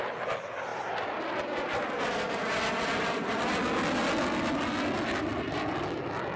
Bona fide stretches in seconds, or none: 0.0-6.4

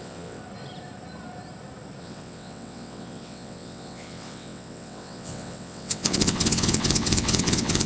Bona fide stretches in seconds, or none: 0.4-2.0

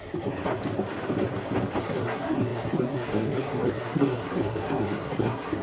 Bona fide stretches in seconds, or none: 0.5-1.8

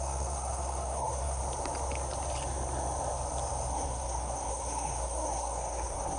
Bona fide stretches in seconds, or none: 1.4-3.7

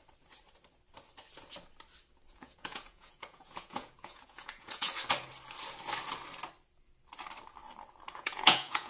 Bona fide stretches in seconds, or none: 0.0-2.3; 4.9-8.1